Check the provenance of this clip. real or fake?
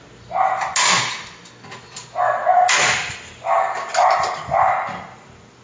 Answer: real